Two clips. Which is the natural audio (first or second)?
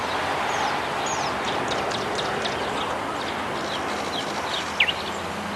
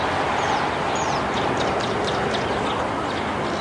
first